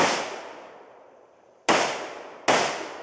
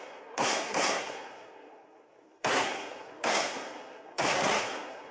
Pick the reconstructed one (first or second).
second